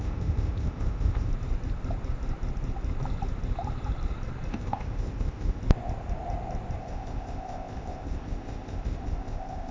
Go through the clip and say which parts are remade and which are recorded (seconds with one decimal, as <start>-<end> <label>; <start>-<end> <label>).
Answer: 0.0-1.3 remade; 1.3-4.5 recorded; 4.5-5.6 remade; 5.6-6.8 recorded; 6.8-9.7 remade